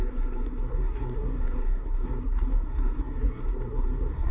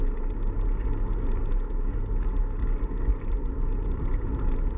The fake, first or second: first